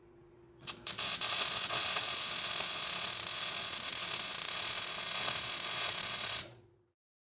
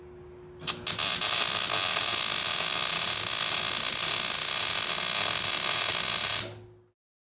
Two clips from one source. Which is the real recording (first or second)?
second